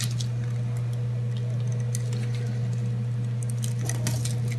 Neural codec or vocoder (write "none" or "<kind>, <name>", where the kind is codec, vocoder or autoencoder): none